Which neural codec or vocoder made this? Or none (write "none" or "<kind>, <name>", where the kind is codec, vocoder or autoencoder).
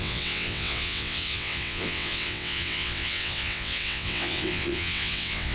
vocoder, WaveNeXt